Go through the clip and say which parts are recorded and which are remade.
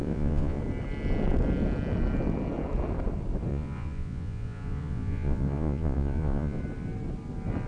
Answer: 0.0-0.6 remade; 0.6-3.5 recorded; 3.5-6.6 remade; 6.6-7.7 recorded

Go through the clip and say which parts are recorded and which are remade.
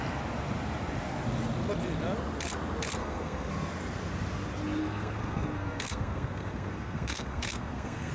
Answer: 0.0-3.0 recorded; 3.0-3.5 remade; 3.5-4.8 recorded; 4.8-8.1 remade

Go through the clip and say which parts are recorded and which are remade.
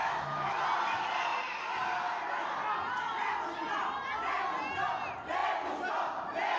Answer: 0.0-0.6 remade; 0.6-6.6 recorded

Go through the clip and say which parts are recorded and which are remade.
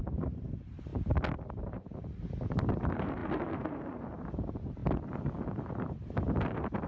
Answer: 0.0-0.9 remade; 0.9-1.7 recorded; 1.7-4.8 remade; 4.8-5.4 recorded; 5.4-6.9 remade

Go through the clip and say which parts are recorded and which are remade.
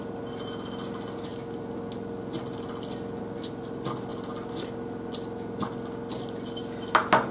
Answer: 0.0-7.3 recorded